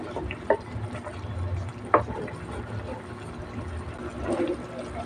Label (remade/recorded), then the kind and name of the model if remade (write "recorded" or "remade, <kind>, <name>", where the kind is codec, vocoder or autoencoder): recorded